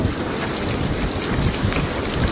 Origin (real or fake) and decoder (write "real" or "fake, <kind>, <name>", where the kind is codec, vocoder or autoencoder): real